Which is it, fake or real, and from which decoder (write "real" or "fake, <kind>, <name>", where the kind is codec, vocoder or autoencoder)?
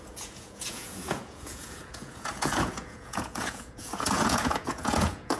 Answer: fake, vocoder, Vocos